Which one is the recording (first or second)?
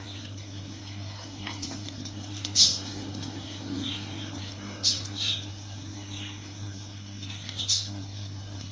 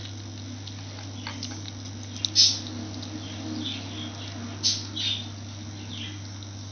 second